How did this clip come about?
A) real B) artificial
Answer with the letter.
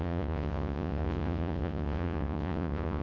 B